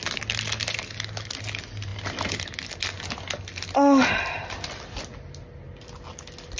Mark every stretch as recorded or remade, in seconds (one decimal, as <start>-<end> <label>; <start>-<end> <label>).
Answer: 0.0-6.6 recorded